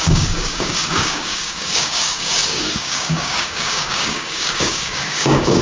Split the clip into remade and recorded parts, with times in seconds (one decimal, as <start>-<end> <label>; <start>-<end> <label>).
0.0-5.6 remade